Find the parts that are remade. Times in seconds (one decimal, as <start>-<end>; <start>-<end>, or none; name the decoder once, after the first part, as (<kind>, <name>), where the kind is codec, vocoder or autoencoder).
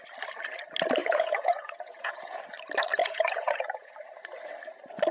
1.0-2.4 (vocoder, Vocos); 3.0-3.9